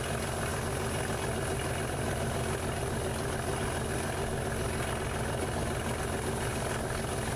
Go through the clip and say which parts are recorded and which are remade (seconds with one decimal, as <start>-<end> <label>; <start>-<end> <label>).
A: 0.0-7.4 recorded